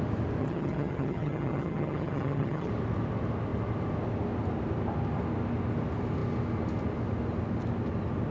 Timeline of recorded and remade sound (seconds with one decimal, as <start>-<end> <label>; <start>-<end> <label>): 0.0-0.4 recorded; 0.4-2.7 remade; 2.7-8.3 recorded